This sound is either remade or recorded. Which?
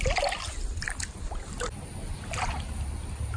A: recorded